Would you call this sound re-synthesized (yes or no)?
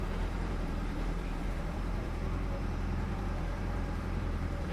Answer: yes